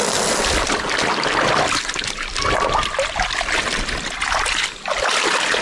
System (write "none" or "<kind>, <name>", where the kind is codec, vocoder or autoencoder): none